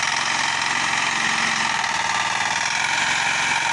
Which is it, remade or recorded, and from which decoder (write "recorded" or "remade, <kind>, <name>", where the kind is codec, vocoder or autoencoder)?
recorded